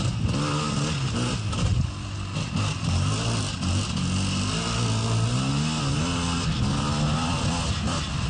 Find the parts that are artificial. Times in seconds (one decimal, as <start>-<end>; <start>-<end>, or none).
none